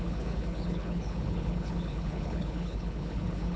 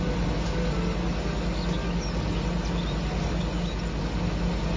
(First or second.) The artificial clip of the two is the first